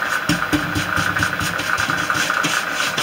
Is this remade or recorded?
recorded